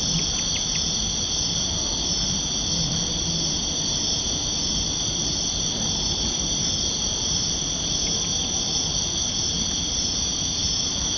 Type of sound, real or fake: real